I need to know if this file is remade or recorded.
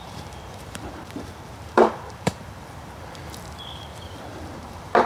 remade